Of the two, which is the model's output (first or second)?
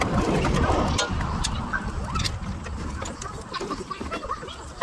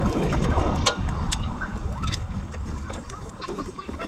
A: second